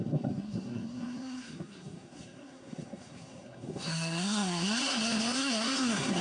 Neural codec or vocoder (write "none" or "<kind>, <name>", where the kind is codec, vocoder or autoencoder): codec, SNAC